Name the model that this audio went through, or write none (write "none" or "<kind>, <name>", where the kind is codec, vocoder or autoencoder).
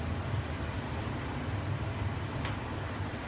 none